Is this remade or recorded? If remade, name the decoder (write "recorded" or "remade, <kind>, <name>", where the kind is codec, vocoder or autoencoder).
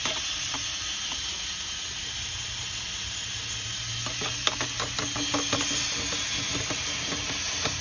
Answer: recorded